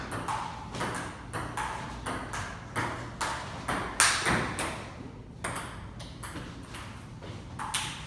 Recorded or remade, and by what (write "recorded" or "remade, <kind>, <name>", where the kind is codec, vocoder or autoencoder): recorded